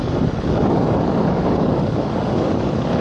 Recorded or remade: remade